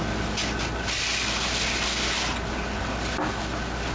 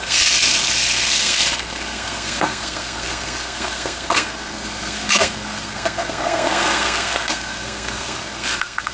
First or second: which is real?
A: first